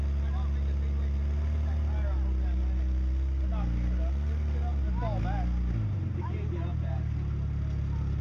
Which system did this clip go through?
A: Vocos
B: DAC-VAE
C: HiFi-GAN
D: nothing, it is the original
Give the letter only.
D